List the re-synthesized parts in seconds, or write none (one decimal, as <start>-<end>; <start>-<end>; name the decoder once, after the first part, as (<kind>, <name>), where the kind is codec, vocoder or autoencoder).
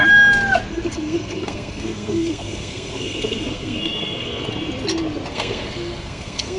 0.7-4.5 (codec, SNAC); 5.3-6.6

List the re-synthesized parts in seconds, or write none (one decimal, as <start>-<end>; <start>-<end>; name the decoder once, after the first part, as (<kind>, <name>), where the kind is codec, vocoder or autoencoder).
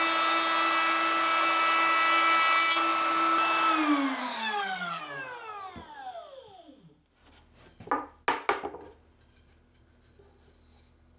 4.2-5.0 (codec, SNAC)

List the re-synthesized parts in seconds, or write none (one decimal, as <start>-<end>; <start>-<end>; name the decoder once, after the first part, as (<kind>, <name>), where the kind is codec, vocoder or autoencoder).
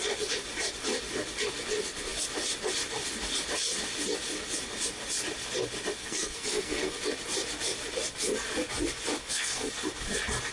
6.0-7.0 (codec, SNAC); 9.2-9.7